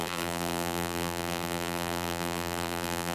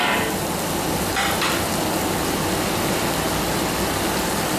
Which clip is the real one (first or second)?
second